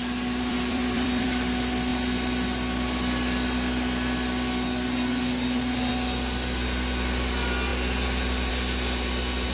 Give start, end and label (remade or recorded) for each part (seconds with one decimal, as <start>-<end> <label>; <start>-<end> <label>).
0.0-0.5 recorded; 0.5-1.3 remade; 1.3-7.7 recorded; 7.7-8.5 remade; 8.5-9.5 recorded